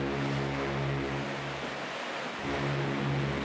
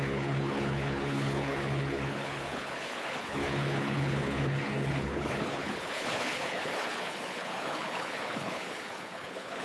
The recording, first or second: first